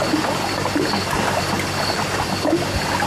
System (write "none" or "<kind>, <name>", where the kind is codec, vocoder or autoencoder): none